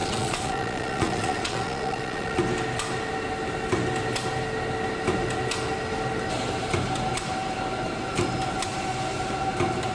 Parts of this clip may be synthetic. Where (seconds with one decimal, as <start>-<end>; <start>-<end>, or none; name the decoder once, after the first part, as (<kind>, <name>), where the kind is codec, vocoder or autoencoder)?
0.0-2.4 (vocoder, Vocos)